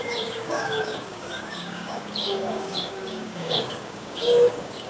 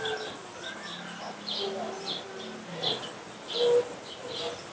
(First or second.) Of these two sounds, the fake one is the first